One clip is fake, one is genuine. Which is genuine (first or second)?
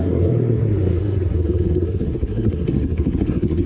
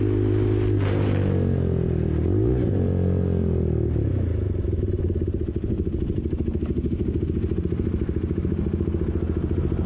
second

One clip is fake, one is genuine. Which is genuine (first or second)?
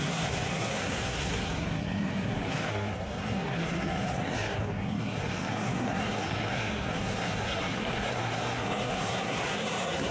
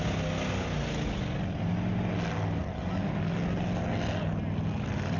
second